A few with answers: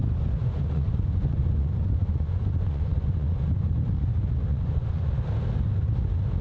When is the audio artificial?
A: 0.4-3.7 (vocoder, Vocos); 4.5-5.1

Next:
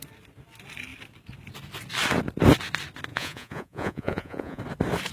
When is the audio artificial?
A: 3.1-4.6 (vocoder, Vocos)

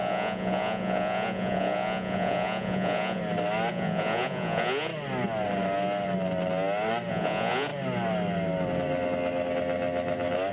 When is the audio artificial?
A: 0.0-3.2 (vocoder, Vocos); 3.7-4.9; 7.1-7.7

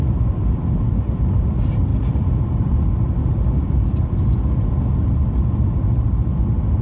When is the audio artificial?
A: none

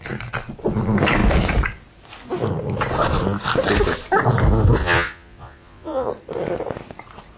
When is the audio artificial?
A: 4.8-6.1 (vocoder, Vocos)

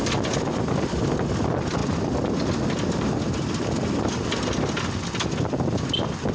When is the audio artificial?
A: none